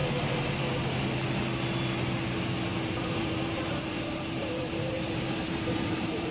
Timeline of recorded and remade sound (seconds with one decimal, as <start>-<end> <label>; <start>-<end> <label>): 0.0-2.7 recorded; 2.7-6.3 remade